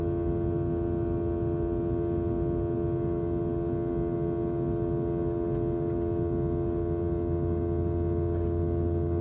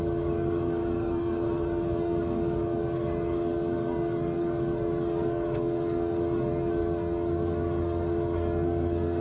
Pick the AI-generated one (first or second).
second